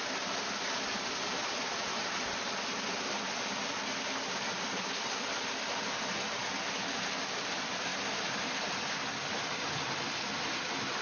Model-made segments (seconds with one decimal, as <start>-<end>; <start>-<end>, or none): none